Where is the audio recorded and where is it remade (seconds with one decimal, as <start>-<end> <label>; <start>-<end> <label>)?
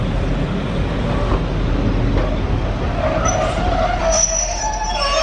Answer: 0.0-4.0 recorded; 4.0-4.6 remade; 4.6-5.2 recorded